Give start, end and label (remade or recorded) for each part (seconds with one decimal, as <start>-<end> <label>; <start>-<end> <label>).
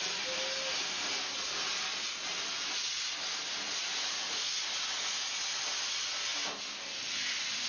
0.0-7.7 recorded